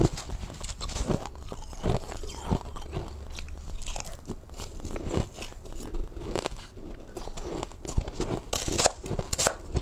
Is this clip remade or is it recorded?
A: recorded